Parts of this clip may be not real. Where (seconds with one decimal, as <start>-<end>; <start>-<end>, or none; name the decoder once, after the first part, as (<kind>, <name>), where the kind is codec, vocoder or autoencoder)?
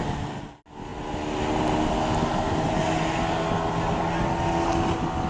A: none